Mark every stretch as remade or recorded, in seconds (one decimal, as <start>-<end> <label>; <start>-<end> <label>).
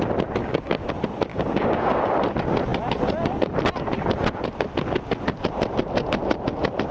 0.0-0.4 recorded; 0.4-0.9 remade; 0.9-1.3 recorded; 1.3-2.0 remade; 2.0-6.9 recorded